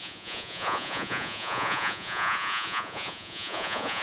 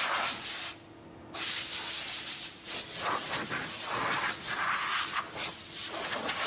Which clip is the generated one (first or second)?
first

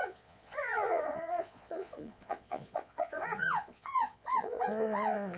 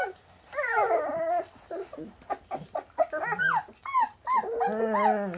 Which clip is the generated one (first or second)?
first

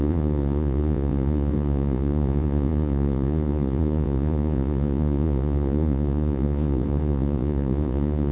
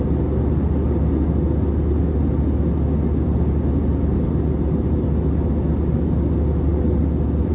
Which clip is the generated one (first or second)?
first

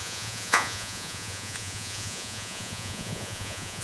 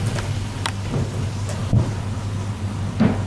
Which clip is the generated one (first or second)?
first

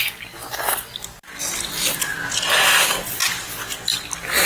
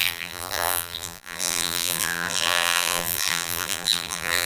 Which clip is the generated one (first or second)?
second